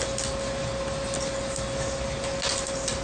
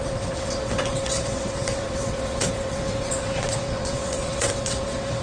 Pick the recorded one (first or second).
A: first